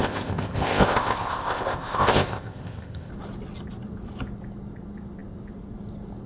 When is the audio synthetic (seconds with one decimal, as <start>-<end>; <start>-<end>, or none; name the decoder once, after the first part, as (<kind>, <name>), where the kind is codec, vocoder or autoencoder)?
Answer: 0.0-3.1 (codec, ZipCodec)